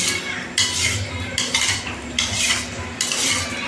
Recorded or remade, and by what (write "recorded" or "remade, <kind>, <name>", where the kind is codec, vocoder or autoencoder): recorded